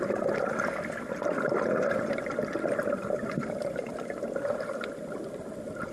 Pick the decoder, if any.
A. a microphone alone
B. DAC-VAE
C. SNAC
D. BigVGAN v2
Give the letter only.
A